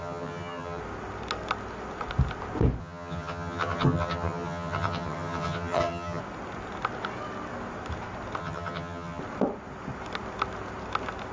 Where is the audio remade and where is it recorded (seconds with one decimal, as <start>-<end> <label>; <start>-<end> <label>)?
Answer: 0.0-0.8 remade; 0.8-2.8 recorded; 2.8-6.2 remade; 6.2-8.4 recorded; 8.4-9.2 remade; 9.2-11.3 recorded